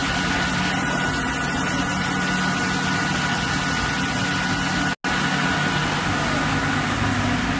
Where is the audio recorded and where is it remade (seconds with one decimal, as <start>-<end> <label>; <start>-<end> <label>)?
0.0-7.6 recorded